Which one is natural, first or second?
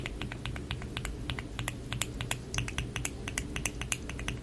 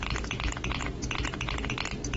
first